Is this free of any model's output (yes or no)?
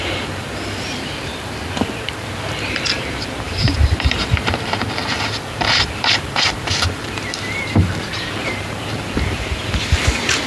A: no